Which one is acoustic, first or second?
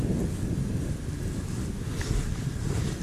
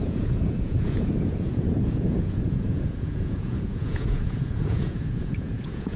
first